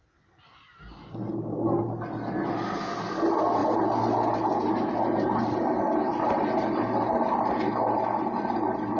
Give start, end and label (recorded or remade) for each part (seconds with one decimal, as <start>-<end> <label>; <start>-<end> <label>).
0.0-9.0 recorded